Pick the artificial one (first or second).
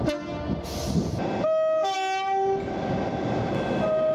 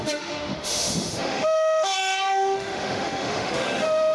second